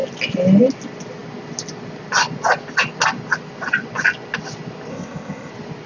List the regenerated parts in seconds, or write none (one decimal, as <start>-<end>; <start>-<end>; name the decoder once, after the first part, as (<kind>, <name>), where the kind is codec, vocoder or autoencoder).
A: 4.9-5.5 (codec, ZipCodec)